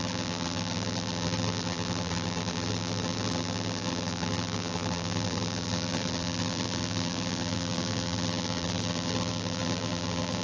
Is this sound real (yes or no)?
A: no